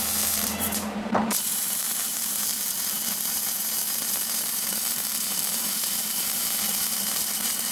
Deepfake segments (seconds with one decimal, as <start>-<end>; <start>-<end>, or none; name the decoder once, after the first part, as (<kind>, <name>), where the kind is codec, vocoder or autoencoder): 0.0-7.7 (vocoder, BigVGAN v2)